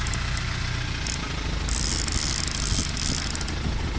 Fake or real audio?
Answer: real